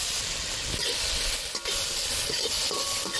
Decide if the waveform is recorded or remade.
recorded